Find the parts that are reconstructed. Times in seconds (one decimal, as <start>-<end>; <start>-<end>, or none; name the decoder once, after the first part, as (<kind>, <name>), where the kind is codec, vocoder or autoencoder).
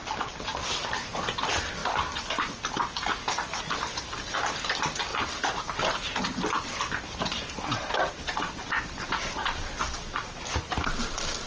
0.5-1.4 (vocoder, BigVGAN v2); 5.1-6.2